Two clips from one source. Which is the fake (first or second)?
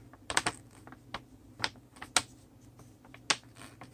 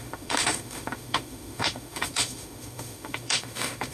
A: second